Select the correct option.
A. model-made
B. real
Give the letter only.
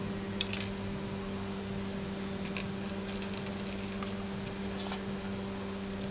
B